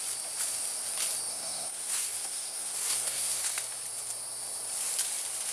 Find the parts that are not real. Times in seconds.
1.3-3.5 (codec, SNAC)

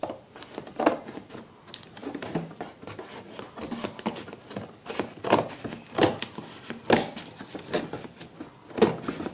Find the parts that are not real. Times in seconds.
none